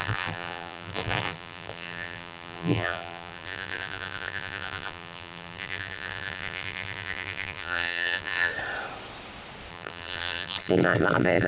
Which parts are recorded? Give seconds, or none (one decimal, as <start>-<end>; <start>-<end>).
8.5-9.7